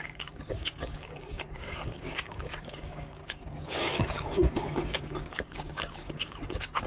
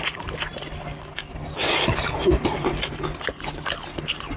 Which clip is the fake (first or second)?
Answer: first